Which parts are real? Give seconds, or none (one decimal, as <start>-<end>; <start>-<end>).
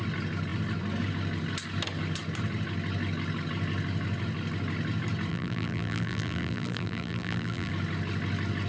0.0-5.3; 7.7-8.7